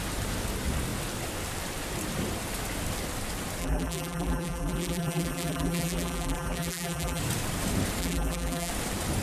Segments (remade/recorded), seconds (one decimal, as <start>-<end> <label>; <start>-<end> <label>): 0.0-3.6 recorded; 3.6-7.2 remade; 7.2-8.0 recorded; 8.0-8.7 remade; 8.7-9.2 recorded